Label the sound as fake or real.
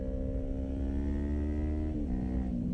real